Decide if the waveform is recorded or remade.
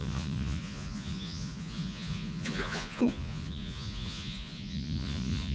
remade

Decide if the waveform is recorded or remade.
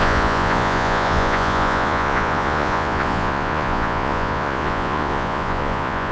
remade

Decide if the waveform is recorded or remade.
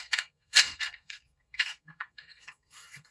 remade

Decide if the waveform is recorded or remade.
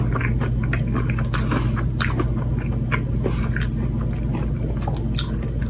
recorded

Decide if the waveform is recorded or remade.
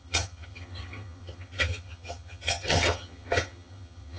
remade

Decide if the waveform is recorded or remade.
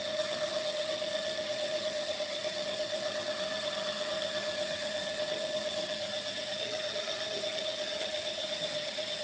remade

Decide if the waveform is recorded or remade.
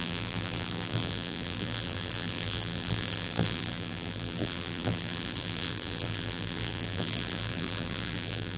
remade